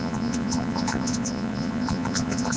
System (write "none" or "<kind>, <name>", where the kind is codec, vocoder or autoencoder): vocoder, Vocos